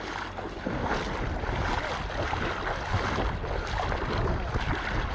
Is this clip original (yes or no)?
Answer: yes